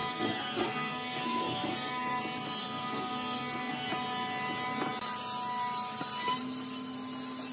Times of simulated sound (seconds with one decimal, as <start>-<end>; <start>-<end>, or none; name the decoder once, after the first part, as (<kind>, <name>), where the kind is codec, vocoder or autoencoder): 0.0-2.2 (codec, SNAC); 2.6-3.9